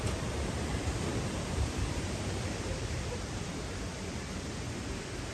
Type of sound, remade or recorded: remade